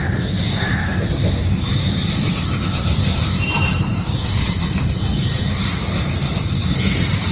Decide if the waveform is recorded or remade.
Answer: remade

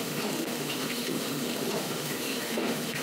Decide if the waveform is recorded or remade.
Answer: remade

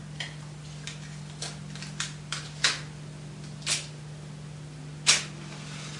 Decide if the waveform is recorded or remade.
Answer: recorded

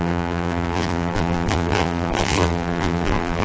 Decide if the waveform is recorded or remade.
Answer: remade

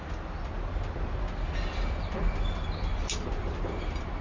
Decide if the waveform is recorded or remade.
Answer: recorded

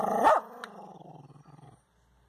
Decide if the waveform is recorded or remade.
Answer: recorded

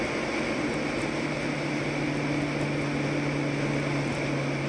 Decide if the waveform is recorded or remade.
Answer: recorded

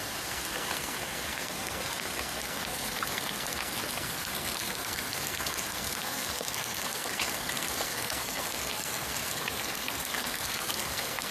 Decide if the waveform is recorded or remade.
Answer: remade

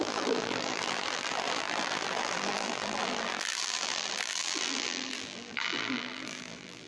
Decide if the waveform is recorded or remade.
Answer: remade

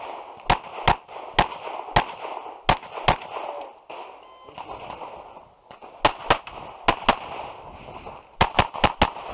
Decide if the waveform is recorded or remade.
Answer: recorded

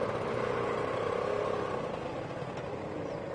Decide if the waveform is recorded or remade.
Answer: remade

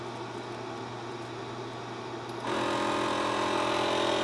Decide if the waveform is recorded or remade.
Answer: recorded